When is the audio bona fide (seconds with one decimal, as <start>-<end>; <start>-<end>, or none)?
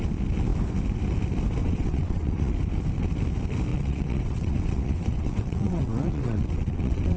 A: 0.0-1.6; 2.5-3.7